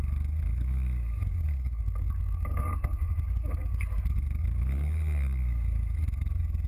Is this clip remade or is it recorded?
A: remade